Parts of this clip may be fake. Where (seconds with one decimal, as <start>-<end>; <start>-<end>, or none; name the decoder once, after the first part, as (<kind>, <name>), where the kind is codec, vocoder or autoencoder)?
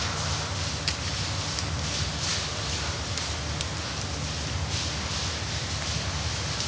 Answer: none